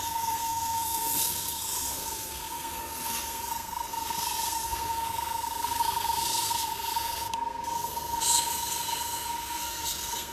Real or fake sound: fake